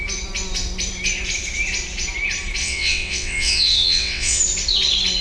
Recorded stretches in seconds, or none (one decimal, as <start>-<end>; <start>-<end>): 0.0-2.6; 4.4-5.2